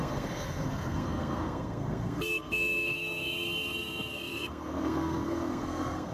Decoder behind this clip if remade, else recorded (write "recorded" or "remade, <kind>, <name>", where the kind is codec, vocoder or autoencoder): remade, codec, SNAC